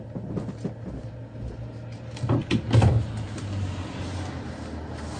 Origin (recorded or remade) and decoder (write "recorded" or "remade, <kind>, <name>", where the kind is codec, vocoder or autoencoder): recorded